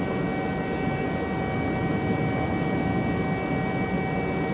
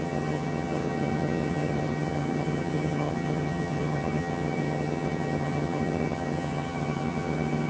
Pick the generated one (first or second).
second